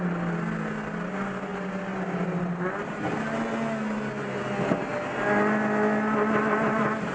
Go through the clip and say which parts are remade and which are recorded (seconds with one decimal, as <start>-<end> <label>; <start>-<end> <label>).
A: 0.0-7.1 recorded